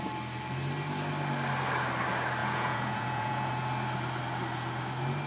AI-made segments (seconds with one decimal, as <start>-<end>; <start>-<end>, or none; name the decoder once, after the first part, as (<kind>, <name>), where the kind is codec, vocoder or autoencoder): 2.4-3.5 (vocoder, Vocos)